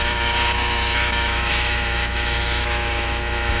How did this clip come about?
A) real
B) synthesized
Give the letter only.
B